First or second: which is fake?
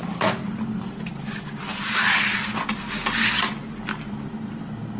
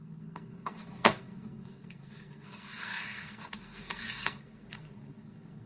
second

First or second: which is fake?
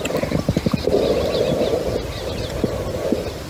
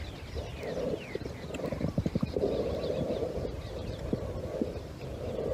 second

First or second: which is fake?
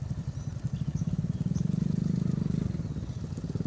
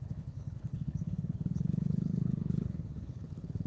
second